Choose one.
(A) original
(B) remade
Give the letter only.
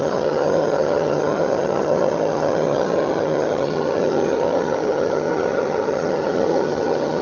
B